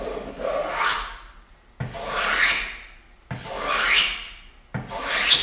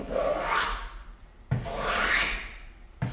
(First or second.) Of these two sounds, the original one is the first